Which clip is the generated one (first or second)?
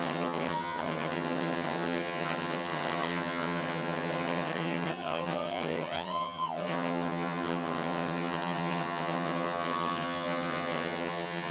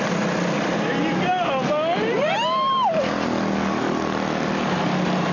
first